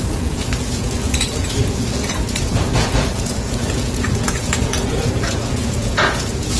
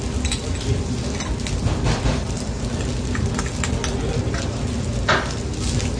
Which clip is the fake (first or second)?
first